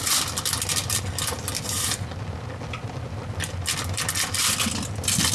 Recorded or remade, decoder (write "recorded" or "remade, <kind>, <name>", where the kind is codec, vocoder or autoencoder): recorded